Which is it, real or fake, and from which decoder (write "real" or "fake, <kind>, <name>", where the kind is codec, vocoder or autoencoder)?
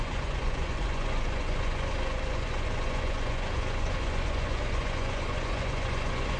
fake, vocoder, Vocos